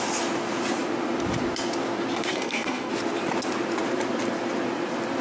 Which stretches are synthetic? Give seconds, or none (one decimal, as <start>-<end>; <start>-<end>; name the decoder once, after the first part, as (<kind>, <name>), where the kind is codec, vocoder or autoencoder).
2.3-2.9 (codec, SNAC)